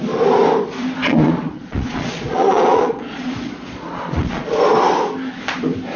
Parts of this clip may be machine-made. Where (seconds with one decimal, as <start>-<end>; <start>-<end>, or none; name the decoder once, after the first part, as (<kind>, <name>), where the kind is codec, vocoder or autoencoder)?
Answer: 1.0-4.6 (vocoder, Vocos)